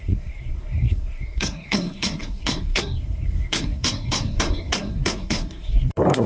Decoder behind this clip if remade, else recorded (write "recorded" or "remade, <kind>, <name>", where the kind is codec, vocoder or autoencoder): remade, codec, SNAC